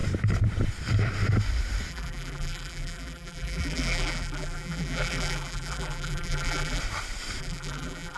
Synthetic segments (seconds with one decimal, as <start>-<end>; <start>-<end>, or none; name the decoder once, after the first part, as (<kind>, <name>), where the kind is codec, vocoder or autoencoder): 1.9-6.8 (vocoder, BigVGAN v2); 7.4-8.2